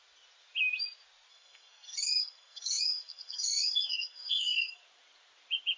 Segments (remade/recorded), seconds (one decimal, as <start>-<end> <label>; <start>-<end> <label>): 0.0-1.3 recorded; 1.3-4.8 remade; 4.8-5.8 recorded